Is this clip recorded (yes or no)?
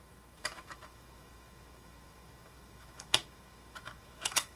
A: no